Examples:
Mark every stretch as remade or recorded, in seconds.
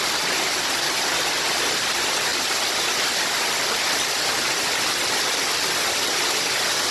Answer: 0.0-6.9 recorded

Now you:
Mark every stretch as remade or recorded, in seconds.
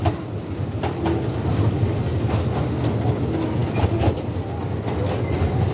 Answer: 0.0-5.7 recorded